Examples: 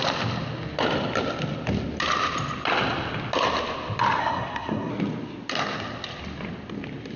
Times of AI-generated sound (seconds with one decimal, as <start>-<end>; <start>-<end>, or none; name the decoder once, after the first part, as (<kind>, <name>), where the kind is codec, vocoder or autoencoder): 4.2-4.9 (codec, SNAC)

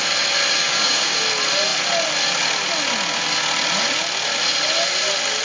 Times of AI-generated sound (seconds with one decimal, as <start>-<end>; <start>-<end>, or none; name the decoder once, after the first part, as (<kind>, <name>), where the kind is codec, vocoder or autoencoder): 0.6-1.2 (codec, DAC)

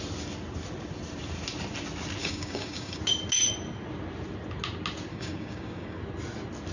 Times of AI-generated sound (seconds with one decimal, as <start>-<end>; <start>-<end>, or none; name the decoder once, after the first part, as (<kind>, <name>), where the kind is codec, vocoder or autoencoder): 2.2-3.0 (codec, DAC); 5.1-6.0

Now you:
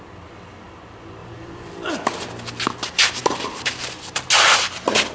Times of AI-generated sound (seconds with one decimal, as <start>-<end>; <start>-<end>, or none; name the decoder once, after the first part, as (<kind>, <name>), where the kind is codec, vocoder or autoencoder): 1.2-1.7 (vocoder, BigVGAN v2)